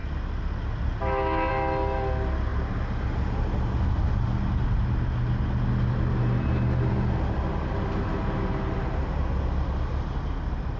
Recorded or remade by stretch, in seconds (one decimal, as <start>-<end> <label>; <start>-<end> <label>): 0.0-10.8 recorded